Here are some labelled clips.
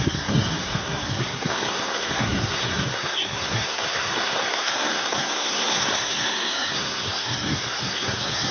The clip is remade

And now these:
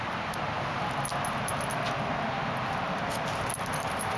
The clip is recorded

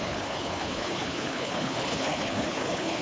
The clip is remade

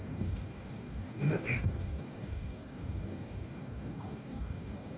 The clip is remade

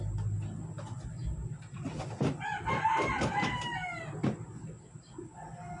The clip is recorded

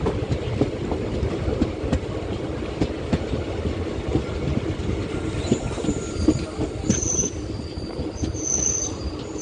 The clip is recorded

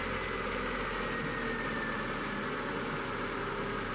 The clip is recorded